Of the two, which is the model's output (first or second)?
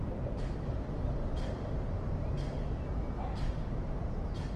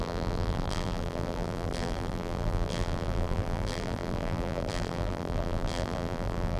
second